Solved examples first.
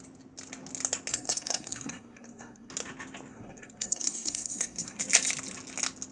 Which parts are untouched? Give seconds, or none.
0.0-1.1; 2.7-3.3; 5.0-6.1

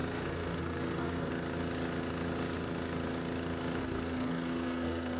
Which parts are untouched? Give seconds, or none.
1.3-3.8

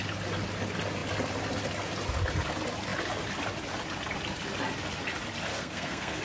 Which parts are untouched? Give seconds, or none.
0.0-5.5